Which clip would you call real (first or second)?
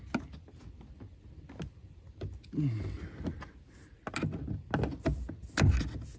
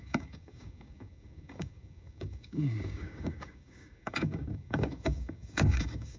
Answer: first